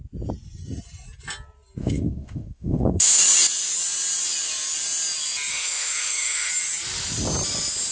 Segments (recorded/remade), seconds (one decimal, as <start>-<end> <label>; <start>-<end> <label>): 0.0-1.8 recorded; 1.8-3.2 remade; 3.2-5.5 recorded; 5.5-6.5 remade; 6.5-7.9 recorded